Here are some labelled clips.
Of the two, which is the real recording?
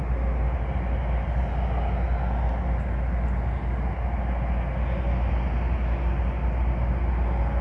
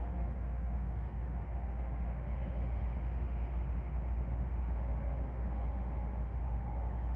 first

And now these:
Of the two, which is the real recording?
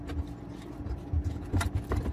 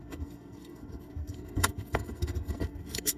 first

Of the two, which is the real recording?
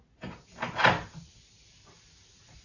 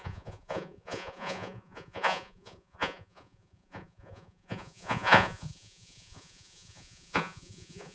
first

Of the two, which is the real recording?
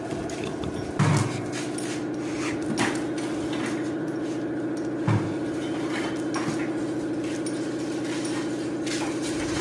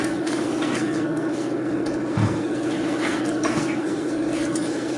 first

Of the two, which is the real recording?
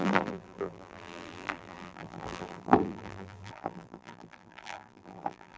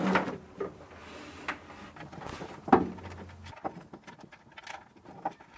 second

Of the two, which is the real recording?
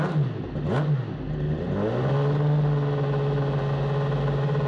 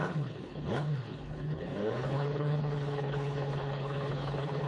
first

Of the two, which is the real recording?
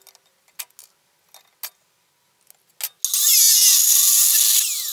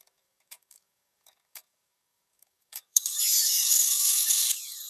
first